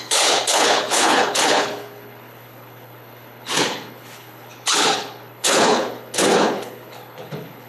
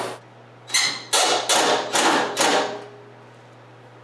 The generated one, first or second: first